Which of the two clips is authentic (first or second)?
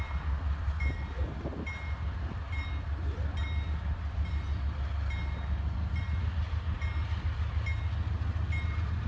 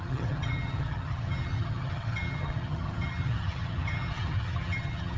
first